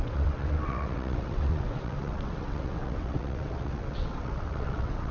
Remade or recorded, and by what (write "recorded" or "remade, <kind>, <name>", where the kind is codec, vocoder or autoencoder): remade, vocoder, WaveNeXt